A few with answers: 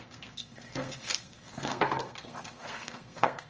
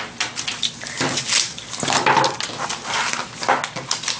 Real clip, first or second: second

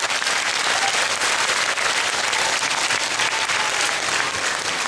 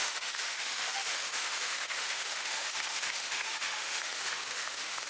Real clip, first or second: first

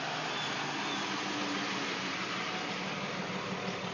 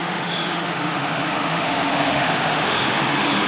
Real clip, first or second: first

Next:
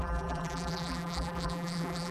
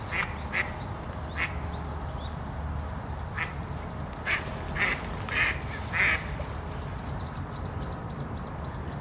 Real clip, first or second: second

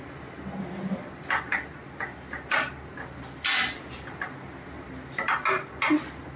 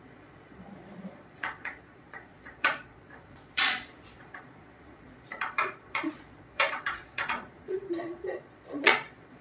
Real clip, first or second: first